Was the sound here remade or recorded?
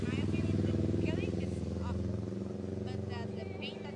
recorded